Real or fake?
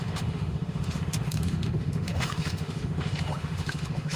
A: fake